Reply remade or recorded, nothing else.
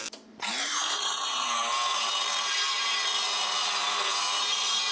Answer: recorded